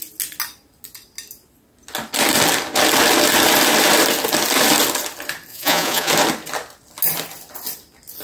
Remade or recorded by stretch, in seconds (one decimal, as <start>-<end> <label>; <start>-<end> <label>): 0.0-5.5 recorded; 5.5-6.1 remade; 6.1-8.2 recorded